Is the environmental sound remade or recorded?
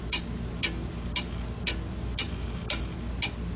recorded